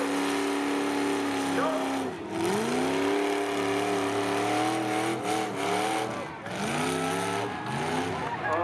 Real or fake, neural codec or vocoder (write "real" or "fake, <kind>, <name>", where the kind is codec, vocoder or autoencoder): real